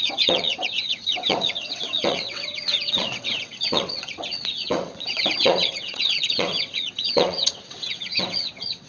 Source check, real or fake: fake